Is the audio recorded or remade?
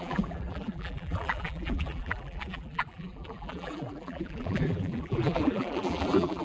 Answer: remade